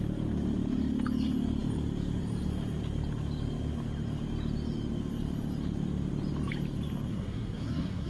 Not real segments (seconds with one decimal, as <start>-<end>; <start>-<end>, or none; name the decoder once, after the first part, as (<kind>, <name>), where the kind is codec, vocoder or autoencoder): 7.1-8.1 (codec, SNAC)